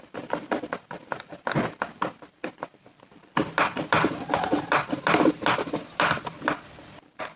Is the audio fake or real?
fake